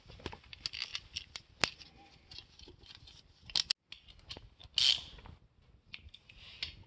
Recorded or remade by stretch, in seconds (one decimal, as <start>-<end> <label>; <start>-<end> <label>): 0.0-6.9 recorded